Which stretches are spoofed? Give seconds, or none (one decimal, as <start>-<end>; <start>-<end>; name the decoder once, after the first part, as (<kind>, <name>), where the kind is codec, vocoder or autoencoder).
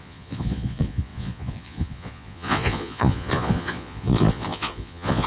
0.0-5.3 (vocoder, Vocos)